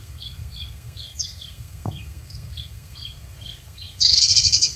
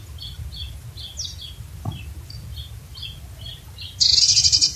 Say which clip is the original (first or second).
second